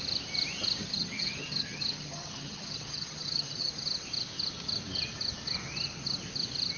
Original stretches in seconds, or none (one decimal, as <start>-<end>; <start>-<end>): 0.0-0.9; 3.7-6.8